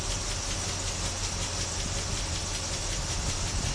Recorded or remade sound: recorded